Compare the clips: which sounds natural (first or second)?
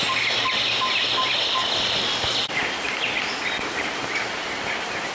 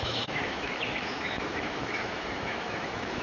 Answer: first